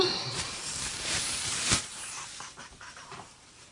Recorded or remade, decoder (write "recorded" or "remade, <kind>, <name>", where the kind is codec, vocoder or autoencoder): remade, vocoder, BigVGAN v2